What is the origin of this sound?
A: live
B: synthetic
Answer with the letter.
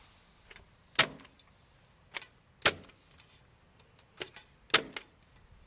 A